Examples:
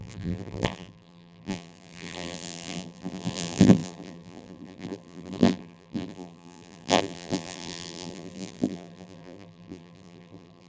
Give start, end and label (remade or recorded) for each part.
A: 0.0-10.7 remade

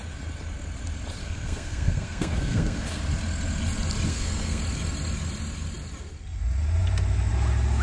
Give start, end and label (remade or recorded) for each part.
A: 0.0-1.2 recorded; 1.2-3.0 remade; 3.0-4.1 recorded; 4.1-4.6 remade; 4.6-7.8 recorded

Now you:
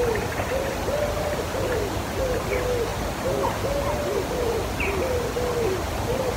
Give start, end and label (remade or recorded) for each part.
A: 0.0-6.4 recorded

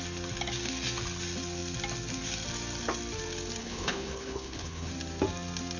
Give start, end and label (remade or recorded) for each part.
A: 0.0-3.6 recorded; 3.6-4.9 remade; 4.9-5.8 recorded

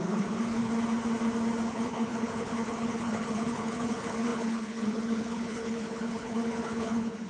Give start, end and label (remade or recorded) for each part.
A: 0.0-0.7 remade; 0.7-1.7 recorded; 1.7-7.3 remade

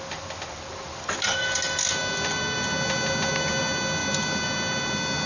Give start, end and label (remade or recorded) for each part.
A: 0.0-5.3 recorded